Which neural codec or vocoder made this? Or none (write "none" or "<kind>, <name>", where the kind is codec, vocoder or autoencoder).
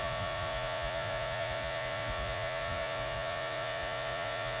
vocoder, Vocos